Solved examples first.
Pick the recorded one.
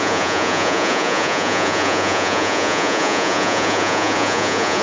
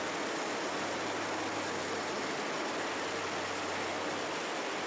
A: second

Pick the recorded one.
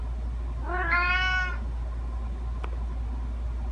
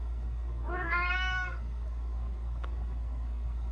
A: first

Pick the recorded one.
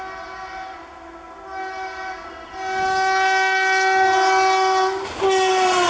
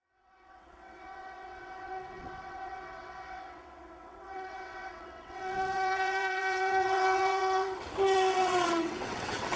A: first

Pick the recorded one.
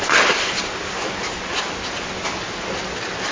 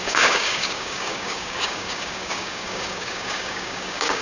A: first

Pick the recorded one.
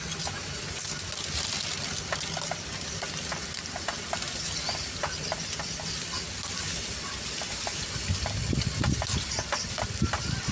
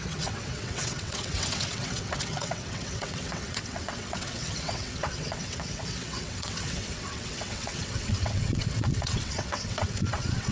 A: first